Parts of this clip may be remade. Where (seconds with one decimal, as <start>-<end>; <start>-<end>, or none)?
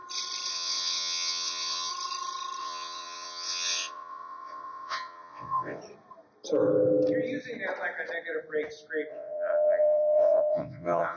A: 0.5-1.9; 2.6-5.8; 9.1-11.2